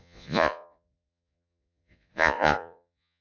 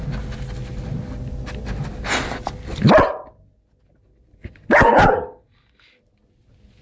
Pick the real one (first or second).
second